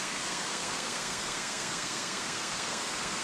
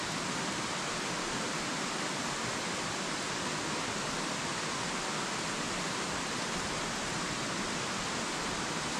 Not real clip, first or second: first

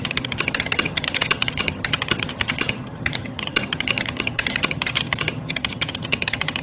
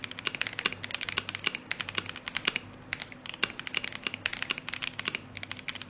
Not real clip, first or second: first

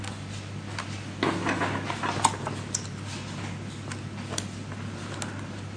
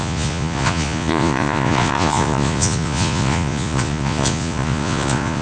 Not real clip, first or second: second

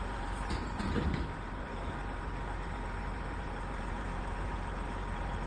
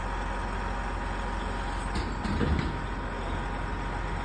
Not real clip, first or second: first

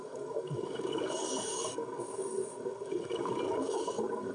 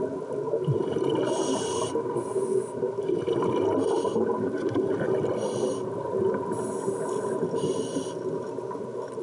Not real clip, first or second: first